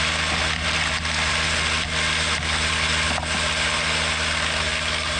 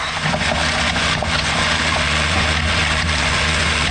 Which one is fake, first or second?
second